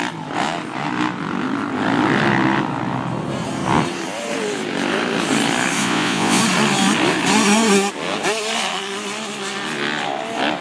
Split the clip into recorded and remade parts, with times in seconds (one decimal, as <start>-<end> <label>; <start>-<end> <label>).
0.0-5.8 recorded; 5.8-6.4 remade; 6.4-10.6 recorded